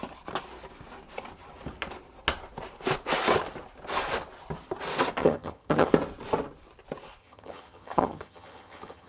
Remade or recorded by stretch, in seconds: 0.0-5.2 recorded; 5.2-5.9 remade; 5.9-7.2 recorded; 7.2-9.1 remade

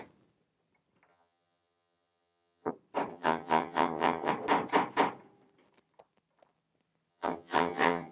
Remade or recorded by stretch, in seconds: 0.0-1.1 recorded; 1.1-2.7 remade; 2.7-3.1 recorded; 3.1-4.3 remade; 4.3-7.1 recorded; 7.1-8.1 remade

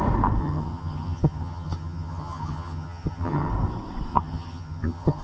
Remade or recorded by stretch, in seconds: 0.0-0.4 recorded; 0.4-3.5 remade; 3.5-4.1 recorded; 4.1-5.2 remade

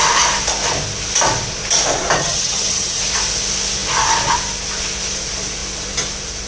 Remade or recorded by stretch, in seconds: 0.0-2.2 recorded; 2.2-3.0 remade; 3.0-6.5 recorded